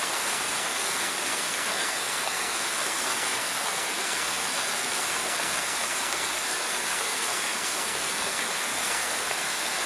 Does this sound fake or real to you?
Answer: fake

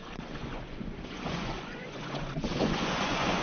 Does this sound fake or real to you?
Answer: fake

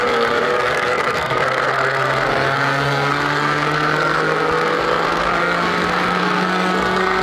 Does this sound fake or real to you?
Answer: fake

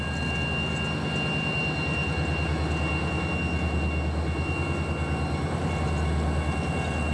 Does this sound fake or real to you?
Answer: real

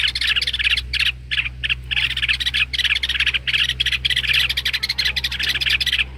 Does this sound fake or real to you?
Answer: real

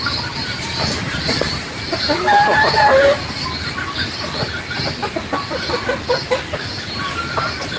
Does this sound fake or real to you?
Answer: fake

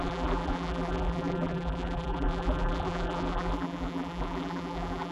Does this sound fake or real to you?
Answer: fake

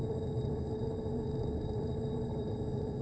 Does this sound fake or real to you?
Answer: real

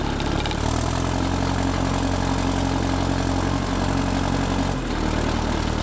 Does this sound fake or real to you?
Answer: real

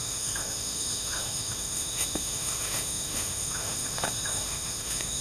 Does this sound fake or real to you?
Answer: fake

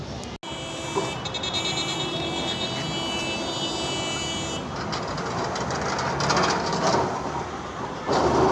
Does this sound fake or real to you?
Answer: real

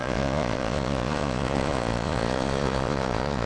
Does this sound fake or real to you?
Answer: fake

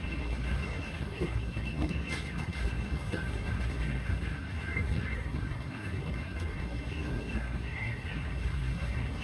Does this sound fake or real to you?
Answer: fake